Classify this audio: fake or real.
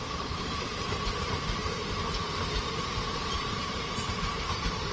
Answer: fake